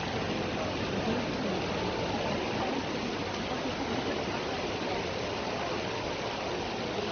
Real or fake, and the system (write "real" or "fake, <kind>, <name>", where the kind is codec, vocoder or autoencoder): real